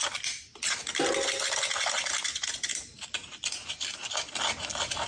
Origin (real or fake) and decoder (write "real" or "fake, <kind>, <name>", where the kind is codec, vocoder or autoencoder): real